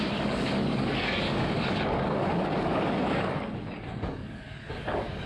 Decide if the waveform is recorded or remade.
remade